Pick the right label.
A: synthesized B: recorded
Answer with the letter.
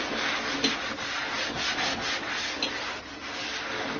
B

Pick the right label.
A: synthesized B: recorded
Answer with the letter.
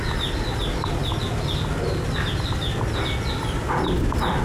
B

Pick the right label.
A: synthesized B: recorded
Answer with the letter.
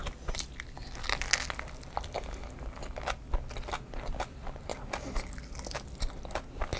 B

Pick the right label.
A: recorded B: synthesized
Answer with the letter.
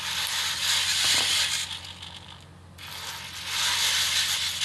A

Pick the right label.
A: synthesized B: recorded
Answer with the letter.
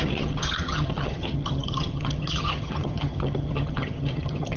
A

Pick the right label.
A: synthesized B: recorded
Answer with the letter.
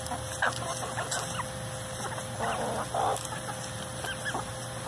B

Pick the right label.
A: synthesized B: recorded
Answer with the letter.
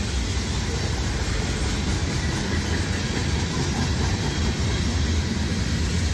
B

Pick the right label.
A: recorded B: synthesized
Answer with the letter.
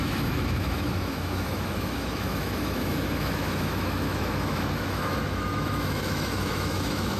B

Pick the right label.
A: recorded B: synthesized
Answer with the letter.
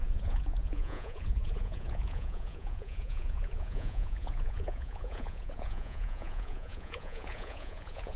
B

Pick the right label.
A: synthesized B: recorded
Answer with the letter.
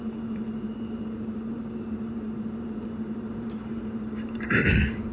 A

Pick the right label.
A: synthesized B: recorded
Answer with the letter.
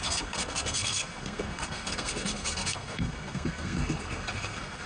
A